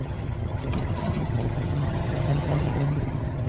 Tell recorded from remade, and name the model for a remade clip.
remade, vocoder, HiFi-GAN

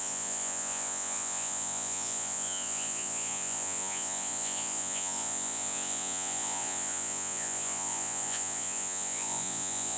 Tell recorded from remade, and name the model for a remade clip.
remade, vocoder, Vocos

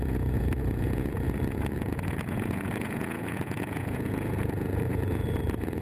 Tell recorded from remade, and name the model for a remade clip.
remade, vocoder, Vocos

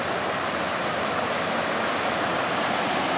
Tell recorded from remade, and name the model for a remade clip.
recorded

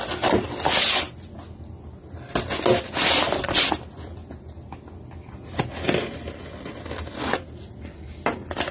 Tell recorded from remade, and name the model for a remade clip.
recorded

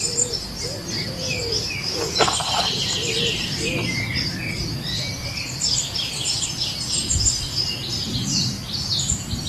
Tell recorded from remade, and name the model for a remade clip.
recorded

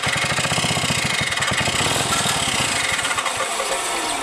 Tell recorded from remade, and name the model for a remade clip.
recorded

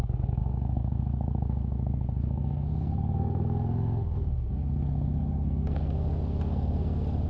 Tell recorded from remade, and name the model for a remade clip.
remade, codec, SNAC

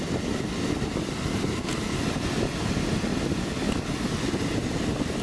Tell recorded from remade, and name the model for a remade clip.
recorded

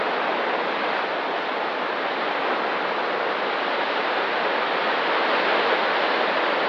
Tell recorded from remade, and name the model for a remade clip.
recorded